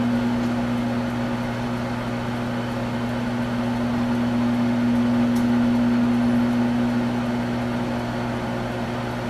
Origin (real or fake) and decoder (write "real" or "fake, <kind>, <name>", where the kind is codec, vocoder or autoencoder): real